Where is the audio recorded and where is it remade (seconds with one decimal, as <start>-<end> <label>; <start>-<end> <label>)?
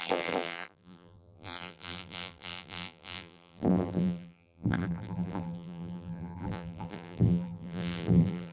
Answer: 0.0-8.5 remade